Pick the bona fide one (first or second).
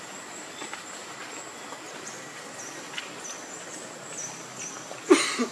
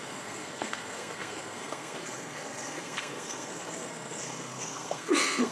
first